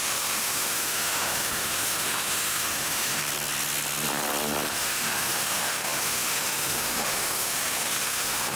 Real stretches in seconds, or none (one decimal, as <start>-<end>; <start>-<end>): 3.2-4.7